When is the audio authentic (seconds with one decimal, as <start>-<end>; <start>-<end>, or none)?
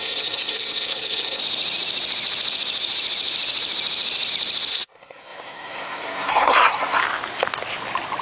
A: 1.4-4.7; 7.0-8.2